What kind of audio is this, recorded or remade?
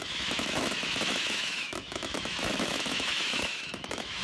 remade